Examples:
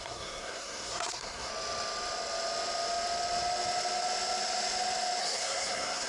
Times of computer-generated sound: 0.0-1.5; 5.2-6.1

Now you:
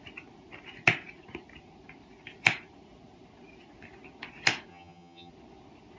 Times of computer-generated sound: 4.7-5.3